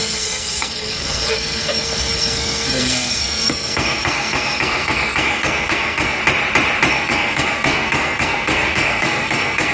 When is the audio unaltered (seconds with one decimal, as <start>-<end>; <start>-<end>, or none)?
6.2-6.9